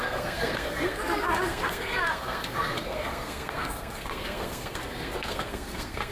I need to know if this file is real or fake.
fake